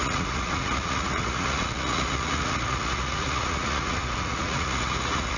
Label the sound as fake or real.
fake